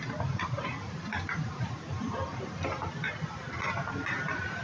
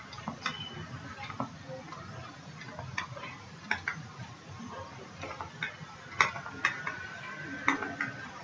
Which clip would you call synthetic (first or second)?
first